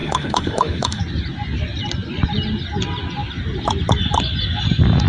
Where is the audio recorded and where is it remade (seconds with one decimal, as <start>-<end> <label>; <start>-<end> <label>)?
0.0-1.0 remade; 1.0-5.1 recorded